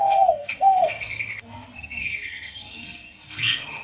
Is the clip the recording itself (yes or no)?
no